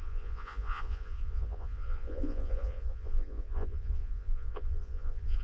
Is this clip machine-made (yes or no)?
yes